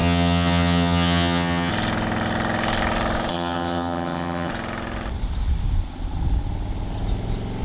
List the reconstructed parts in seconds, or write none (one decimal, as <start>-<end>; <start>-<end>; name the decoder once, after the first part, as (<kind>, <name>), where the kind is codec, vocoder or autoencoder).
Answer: 0.0-1.7 (vocoder, HiFi-GAN); 3.3-4.5